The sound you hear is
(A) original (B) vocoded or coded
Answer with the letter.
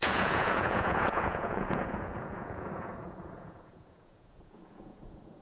B